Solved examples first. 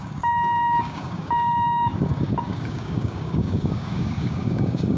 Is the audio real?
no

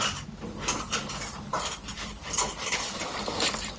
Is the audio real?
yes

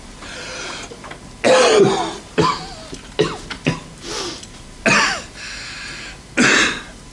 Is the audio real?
yes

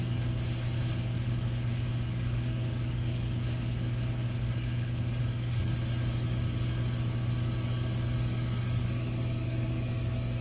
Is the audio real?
no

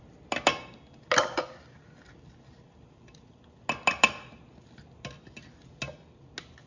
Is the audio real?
yes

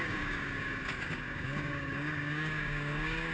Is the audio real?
no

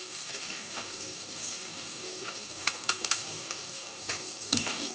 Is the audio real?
no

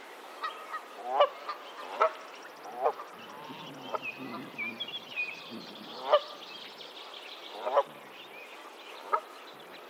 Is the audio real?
yes